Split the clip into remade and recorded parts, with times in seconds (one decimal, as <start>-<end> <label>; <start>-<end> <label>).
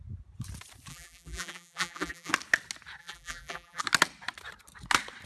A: 0.0-0.9 recorded; 0.9-2.3 remade; 2.3-3.0 recorded; 3.0-3.8 remade; 3.8-5.3 recorded